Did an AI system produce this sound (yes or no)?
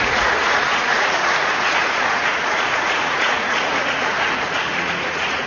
yes